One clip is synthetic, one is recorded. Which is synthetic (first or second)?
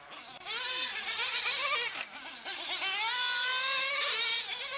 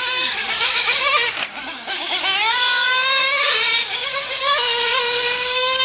second